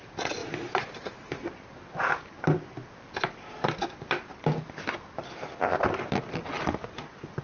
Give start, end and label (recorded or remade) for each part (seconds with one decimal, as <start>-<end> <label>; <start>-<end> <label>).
0.0-0.4 recorded; 0.4-2.0 remade; 2.0-7.4 recorded